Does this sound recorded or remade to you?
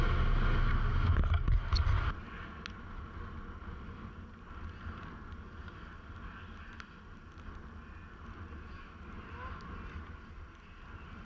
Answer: recorded